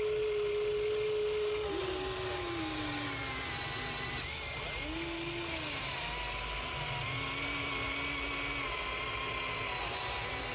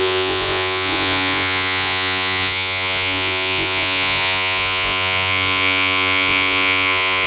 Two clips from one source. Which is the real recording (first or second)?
first